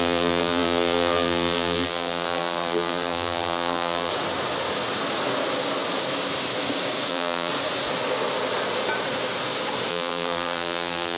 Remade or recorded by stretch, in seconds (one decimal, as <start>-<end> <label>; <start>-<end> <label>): 0.0-4.1 remade; 4.1-7.1 recorded; 7.1-7.5 remade; 7.5-9.9 recorded; 9.9-11.2 remade